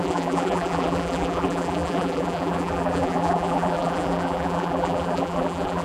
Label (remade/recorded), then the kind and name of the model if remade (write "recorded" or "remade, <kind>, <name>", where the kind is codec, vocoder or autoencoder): remade, vocoder, BigVGAN v2